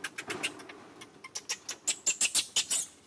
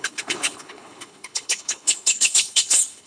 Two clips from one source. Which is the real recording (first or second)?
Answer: first